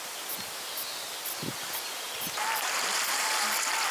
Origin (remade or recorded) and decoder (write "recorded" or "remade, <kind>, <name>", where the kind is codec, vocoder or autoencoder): recorded